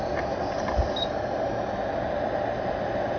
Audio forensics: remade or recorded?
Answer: recorded